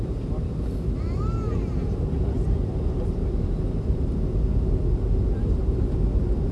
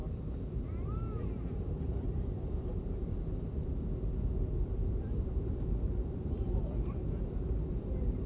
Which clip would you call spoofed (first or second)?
second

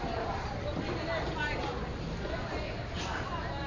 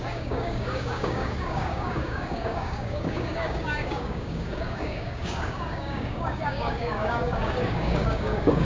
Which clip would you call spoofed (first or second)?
second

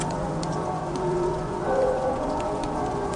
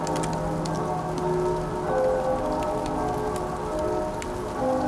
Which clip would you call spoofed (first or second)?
first